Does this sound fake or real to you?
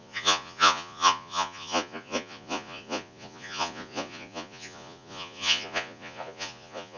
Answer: fake